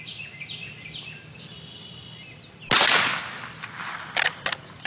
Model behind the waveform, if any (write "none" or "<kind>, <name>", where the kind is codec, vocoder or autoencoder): none